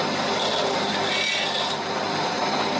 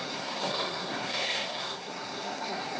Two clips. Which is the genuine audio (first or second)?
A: first